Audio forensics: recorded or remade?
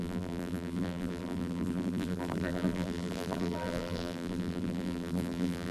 remade